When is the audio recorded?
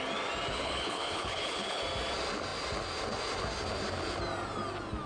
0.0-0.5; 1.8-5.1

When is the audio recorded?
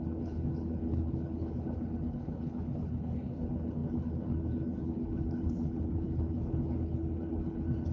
none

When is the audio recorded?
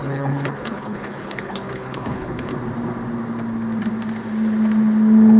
2.5-5.4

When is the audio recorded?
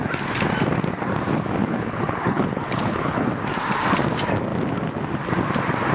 0.0-1.6; 3.3-5.9